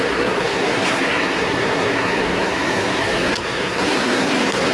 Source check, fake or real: fake